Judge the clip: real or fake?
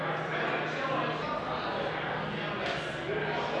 real